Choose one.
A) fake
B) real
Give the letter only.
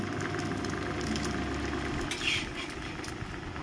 B